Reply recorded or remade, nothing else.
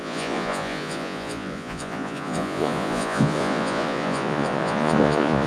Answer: remade